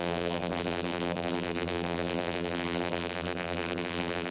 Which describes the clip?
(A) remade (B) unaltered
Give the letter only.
A